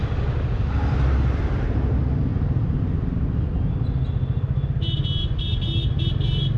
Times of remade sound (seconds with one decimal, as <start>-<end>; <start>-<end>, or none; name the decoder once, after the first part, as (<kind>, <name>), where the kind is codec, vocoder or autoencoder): none